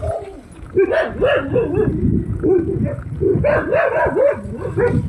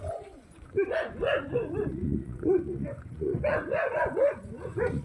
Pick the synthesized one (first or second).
second